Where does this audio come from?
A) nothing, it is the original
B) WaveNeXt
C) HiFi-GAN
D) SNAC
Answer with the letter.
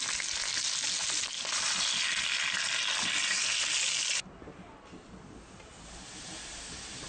A